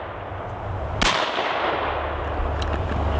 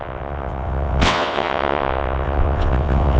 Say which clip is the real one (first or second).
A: first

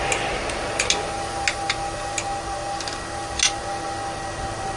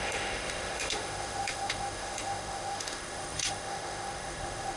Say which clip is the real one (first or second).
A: first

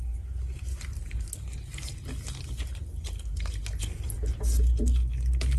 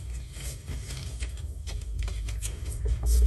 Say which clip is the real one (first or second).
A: first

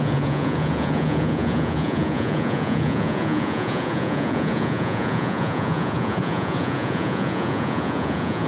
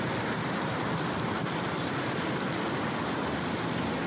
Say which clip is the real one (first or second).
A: second